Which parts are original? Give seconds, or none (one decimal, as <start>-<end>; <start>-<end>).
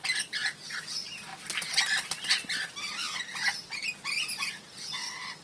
0.0-5.4